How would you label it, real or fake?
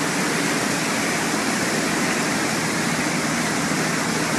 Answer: real